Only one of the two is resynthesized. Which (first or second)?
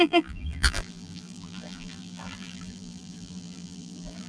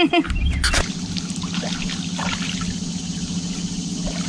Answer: first